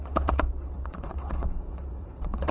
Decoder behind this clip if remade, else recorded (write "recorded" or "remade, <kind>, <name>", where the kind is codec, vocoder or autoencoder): remade, vocoder, WaveNeXt